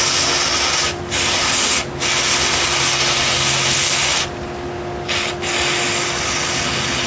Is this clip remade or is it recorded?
recorded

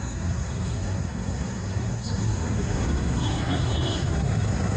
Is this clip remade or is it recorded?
remade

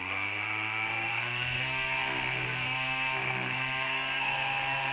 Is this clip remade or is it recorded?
remade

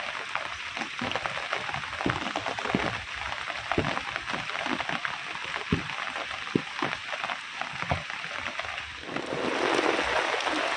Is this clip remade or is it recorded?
recorded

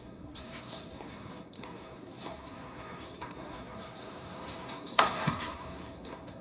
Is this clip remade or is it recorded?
remade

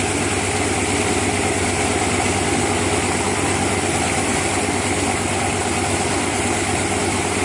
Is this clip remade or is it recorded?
recorded